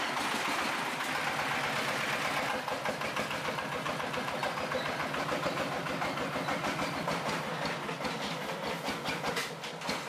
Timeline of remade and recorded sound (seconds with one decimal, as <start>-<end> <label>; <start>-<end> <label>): 0.0-10.1 recorded